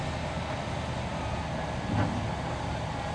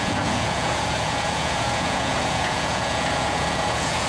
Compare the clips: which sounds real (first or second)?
first